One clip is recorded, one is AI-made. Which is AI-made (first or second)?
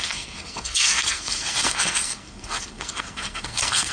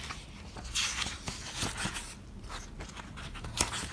first